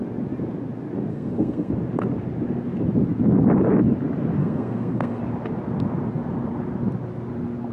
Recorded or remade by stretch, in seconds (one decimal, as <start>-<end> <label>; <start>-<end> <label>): 0.0-1.1 recorded; 1.1-1.7 remade; 1.7-4.4 recorded; 4.4-5.2 remade; 5.2-7.7 recorded